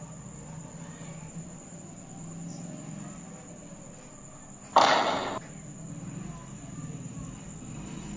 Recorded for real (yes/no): yes